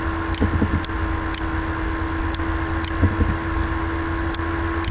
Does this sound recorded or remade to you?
recorded